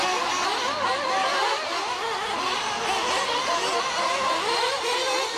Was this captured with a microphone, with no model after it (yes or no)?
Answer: yes